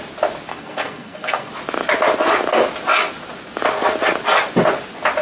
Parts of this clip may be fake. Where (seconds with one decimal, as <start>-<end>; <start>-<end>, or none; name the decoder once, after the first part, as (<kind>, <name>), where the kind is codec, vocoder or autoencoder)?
0.5-1.5 (codec, SNAC)